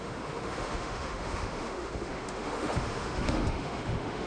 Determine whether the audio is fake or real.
fake